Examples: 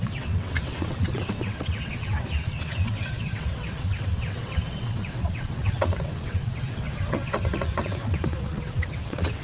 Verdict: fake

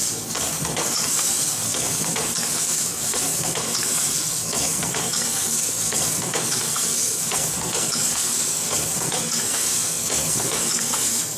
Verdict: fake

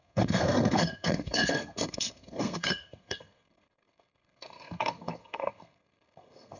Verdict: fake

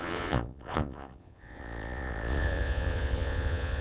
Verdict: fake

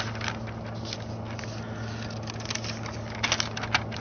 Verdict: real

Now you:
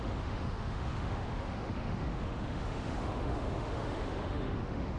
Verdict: fake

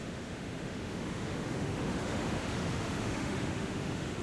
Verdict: fake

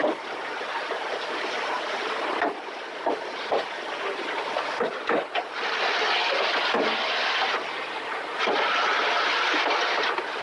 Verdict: real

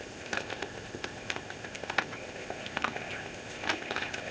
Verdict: fake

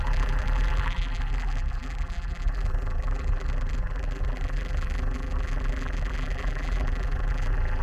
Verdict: fake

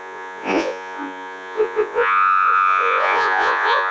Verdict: fake